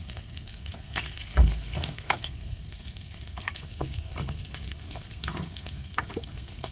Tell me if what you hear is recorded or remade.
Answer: remade